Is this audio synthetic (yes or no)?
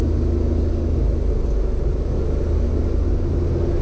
no